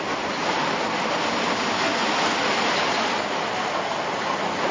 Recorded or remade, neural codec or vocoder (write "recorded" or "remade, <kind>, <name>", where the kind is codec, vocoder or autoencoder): recorded